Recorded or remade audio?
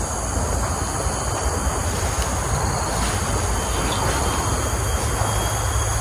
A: recorded